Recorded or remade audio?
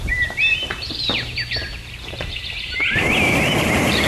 remade